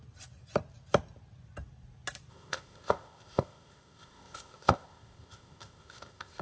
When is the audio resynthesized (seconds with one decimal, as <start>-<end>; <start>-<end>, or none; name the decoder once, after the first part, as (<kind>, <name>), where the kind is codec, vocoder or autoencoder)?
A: 2.3-6.4 (codec, ZipCodec)